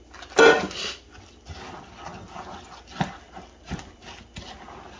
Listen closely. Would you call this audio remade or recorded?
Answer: recorded